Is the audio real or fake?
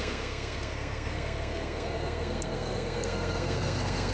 fake